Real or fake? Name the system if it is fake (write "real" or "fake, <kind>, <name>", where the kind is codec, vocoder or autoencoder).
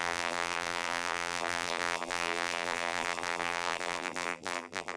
fake, vocoder, BigVGAN v2